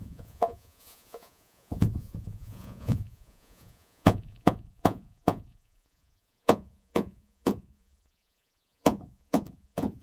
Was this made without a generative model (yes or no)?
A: no